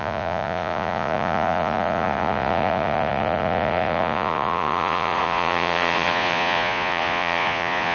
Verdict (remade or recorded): remade